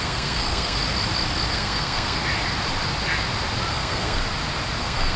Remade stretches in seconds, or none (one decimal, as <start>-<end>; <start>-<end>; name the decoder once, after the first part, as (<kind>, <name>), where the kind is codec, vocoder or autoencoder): 0.0-0.8 (codec, SNAC); 1.5-2.2; 3.7-4.2; 4.8-5.2